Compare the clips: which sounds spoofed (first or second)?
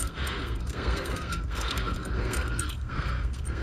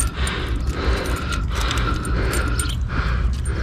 first